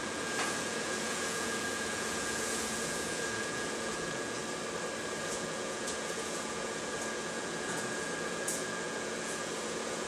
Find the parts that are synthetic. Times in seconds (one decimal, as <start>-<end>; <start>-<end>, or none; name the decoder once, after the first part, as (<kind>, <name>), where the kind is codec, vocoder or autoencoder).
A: 0.0-4.4 (vocoder, Vocos); 5.2-10.1

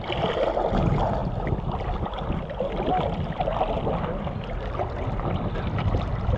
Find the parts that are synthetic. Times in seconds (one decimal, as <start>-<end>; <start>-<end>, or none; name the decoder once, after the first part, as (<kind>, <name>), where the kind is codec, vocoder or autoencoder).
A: none

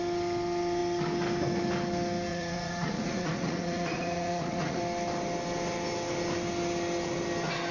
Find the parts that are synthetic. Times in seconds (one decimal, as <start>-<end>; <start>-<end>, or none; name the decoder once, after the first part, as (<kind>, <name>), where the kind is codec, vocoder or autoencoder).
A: 2.3-4.8 (vocoder, Vocos)

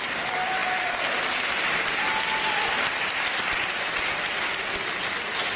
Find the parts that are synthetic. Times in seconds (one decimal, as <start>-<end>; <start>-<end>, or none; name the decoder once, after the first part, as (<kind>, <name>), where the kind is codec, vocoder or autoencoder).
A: none

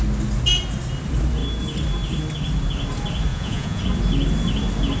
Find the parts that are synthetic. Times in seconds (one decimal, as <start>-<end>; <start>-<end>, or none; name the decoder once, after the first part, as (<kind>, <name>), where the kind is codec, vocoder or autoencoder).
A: 3.3-3.8 (vocoder, Vocos)

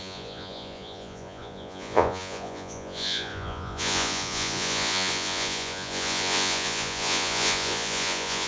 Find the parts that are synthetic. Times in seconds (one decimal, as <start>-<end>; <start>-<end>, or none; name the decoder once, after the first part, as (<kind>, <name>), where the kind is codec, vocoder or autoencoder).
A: 0.0-8.5 (vocoder, Vocos)